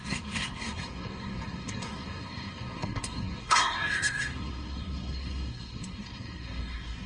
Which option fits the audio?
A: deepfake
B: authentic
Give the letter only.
A